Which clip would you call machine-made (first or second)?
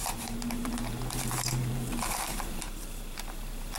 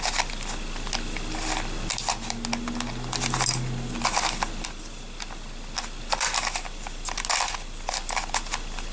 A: first